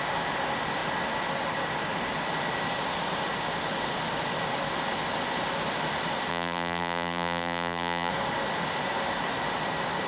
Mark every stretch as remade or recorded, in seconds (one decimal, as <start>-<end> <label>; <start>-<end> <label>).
0.0-6.3 recorded; 6.3-8.1 remade; 8.1-10.1 recorded